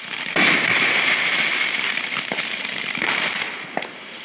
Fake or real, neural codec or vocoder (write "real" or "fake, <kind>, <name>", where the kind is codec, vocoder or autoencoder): fake, vocoder, BigVGAN v2